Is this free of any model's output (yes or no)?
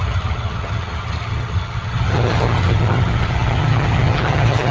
no